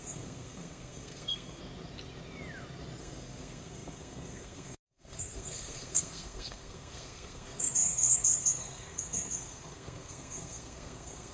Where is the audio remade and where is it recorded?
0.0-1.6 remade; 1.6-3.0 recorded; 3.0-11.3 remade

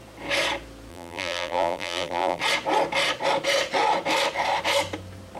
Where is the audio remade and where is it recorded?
0.0-0.9 recorded; 0.9-2.4 remade; 2.4-5.4 recorded

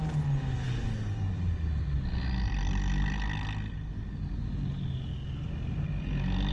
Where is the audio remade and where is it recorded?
0.0-6.5 recorded

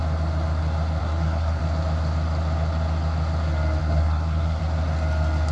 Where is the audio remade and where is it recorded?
0.0-1.0 recorded; 1.0-1.6 remade; 1.6-3.8 recorded; 3.8-4.6 remade; 4.6-5.5 recorded

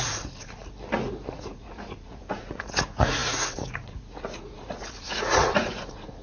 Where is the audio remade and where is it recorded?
0.0-0.6 remade; 0.6-1.3 recorded; 1.3-6.2 remade

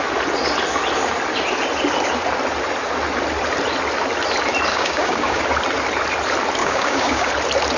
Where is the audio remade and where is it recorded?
0.0-4.7 recorded; 4.7-5.4 remade; 5.4-6.6 recorded; 6.6-7.3 remade; 7.3-7.8 recorded

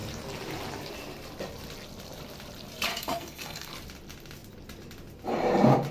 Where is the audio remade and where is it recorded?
0.0-2.9 recorded; 2.9-3.7 remade; 3.7-5.9 recorded

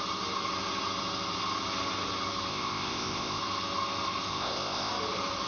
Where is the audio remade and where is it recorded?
0.0-2.5 recorded; 2.5-3.4 remade; 3.4-4.3 recorded; 4.3-4.9 remade; 4.9-5.5 recorded